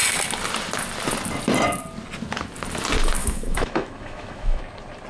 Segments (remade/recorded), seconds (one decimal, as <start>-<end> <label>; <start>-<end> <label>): 0.0-3.2 recorded; 3.2-4.6 remade; 4.6-5.1 recorded